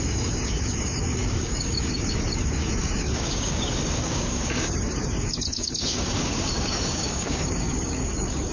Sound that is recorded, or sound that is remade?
remade